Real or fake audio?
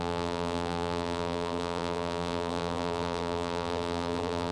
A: fake